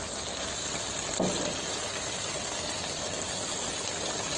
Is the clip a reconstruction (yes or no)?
no